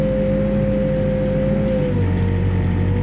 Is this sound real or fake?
real